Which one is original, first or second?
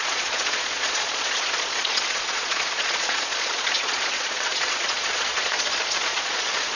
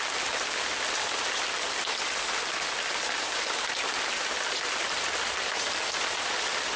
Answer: second